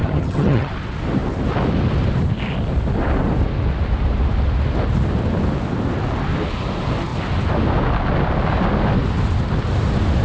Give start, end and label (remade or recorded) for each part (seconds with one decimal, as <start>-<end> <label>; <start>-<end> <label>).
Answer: 0.0-0.7 remade; 0.7-10.2 recorded